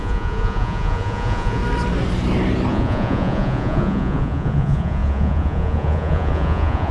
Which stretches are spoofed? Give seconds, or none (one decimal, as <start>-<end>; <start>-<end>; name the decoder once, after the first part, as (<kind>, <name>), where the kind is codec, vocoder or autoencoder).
0.0-1.6 (vocoder, Vocos); 2.7-6.9